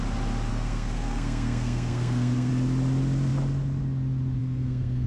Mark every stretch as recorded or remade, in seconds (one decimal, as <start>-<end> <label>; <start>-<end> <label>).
0.0-0.5 recorded; 0.5-2.5 remade; 2.5-4.4 recorded; 4.4-5.1 remade